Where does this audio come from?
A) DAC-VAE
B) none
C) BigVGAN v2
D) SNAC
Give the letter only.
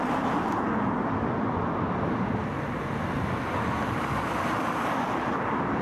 B